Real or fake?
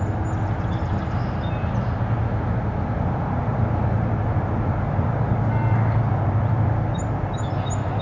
real